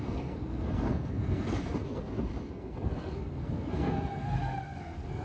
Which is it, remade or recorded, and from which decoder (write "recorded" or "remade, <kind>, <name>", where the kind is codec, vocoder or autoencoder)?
remade, codec, SNAC